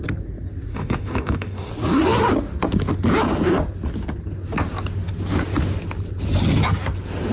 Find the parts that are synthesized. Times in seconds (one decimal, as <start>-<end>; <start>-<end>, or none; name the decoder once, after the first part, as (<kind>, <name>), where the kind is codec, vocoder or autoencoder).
0.7-1.7 (autoencoder, DAC-VAE)

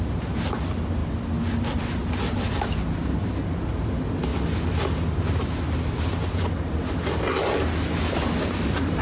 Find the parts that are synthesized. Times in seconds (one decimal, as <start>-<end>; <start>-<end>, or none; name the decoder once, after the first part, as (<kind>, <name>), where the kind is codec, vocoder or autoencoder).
none

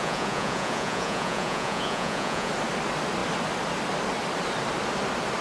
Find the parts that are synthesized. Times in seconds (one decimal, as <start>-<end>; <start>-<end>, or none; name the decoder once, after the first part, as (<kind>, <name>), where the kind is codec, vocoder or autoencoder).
0.0-2.5 (vocoder, Vocos)

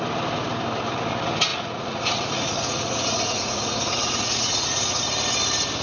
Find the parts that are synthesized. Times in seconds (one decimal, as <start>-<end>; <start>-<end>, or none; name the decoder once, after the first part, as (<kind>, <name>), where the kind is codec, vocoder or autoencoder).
1.5-5.0 (vocoder, Vocos)

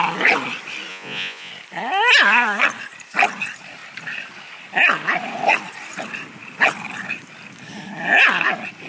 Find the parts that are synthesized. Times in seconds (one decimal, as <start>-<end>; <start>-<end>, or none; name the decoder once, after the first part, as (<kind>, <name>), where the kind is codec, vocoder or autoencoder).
0.9-1.5 (vocoder, Vocos)

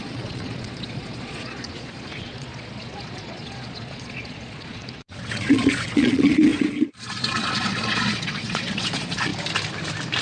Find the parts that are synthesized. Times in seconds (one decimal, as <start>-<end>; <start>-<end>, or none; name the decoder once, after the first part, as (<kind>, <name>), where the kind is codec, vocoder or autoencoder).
0.0-9.3 (vocoder, Vocos)

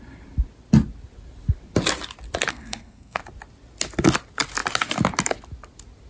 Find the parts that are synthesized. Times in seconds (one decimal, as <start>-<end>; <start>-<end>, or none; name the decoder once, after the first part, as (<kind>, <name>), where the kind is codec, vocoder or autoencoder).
2.5-3.2 (codec, SNAC)

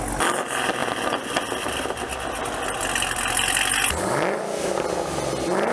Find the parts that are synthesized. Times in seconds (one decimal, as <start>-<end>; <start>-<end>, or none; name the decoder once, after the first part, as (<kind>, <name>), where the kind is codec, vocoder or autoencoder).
none